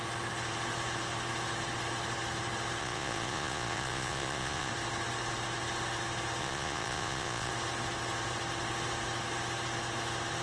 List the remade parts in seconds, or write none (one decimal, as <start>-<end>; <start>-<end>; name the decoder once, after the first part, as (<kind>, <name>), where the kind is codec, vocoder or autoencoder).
2.8-4.7 (vocoder, Vocos); 6.4-7.5